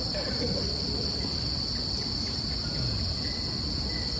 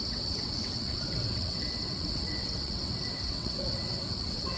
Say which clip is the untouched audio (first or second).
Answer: first